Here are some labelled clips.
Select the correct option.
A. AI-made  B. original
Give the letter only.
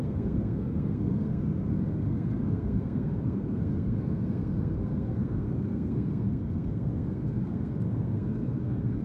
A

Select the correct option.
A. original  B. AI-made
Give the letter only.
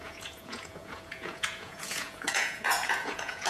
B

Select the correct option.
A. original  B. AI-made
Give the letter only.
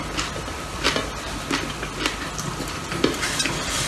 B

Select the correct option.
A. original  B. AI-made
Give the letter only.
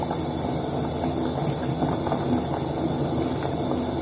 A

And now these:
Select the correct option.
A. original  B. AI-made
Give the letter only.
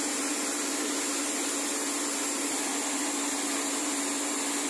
A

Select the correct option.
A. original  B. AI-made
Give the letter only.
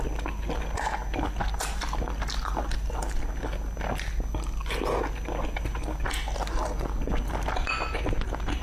A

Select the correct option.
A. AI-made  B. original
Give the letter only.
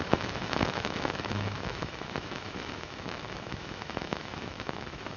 A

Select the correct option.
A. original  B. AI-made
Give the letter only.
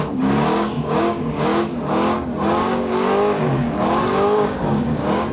B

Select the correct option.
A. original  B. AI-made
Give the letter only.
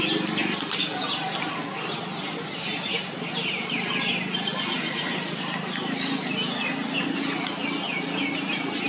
A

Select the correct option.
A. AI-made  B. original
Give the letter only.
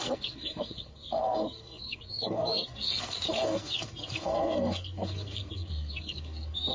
A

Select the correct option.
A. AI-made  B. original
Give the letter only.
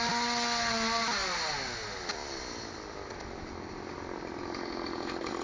B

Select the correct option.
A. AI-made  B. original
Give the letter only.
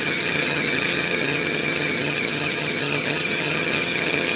A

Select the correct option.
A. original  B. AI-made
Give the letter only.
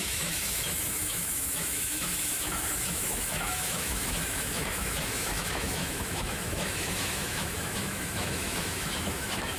B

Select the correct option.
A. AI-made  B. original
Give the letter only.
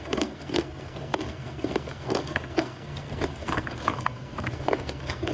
A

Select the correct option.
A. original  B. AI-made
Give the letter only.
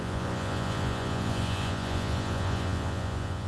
B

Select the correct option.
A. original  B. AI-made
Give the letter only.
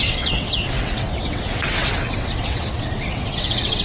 B